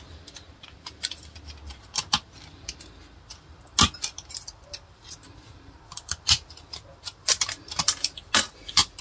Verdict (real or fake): real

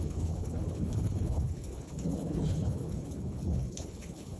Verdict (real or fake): fake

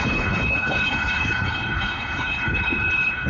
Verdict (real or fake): fake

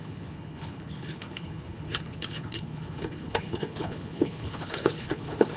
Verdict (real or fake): fake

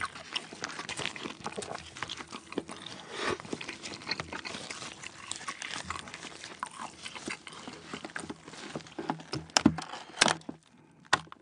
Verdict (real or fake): real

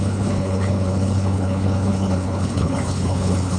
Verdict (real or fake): fake